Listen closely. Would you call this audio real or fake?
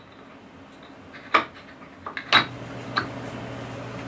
real